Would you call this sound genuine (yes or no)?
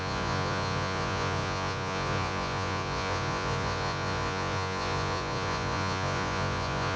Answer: no